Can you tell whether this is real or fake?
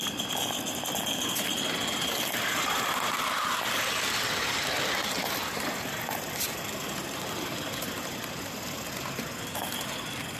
real